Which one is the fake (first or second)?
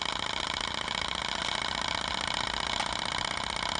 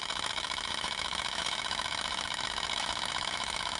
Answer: second